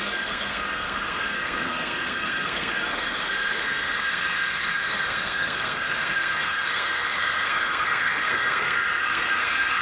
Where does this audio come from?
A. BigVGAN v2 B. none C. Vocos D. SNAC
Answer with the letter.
D